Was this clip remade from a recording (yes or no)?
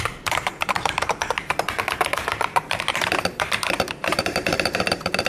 yes